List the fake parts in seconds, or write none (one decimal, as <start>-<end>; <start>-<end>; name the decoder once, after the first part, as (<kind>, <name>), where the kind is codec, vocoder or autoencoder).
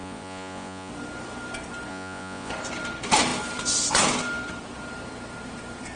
0.0-0.9 (vocoder, Vocos); 1.9-2.5